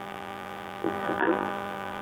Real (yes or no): no